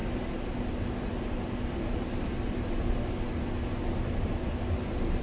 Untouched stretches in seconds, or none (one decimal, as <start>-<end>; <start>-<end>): 0.0-5.2